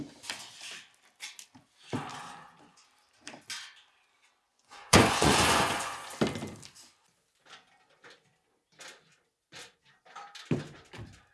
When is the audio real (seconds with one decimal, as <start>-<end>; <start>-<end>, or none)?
0.0-2.1; 2.9-4.5; 6.1-11.3